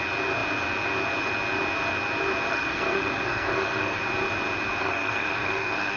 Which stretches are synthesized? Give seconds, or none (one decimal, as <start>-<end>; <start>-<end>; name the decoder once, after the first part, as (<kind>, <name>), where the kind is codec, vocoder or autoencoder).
2.5-4.0 (codec, SNAC); 4.8-6.0